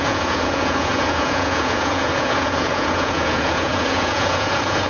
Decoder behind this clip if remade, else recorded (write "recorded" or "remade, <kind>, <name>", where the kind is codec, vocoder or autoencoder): remade, vocoder, Vocos